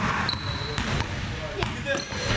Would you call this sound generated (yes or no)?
no